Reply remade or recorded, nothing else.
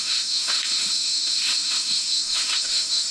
remade